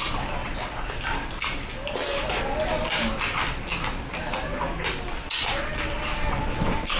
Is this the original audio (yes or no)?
yes